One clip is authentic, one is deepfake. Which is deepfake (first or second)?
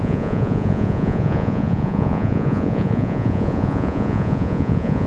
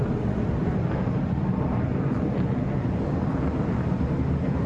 first